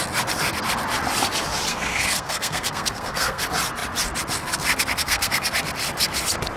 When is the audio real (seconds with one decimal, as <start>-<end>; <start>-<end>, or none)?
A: 0.0-1.7; 3.4-5.0; 5.5-6.6

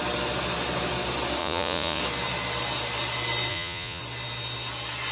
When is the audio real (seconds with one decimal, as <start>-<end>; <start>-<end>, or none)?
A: 0.0-1.4; 2.0-3.5; 4.0-5.1

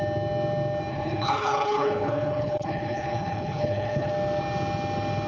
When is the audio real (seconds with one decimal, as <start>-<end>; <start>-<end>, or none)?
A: 0.0-0.9; 4.1-5.3